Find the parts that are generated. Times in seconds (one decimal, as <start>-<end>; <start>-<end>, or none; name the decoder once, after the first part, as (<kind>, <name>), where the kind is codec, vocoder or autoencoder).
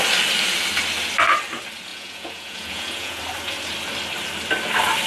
1.9-3.2 (vocoder, Vocos)